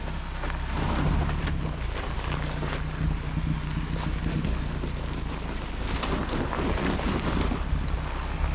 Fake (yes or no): no